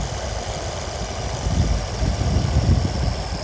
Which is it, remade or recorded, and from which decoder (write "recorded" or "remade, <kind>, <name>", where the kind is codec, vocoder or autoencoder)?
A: recorded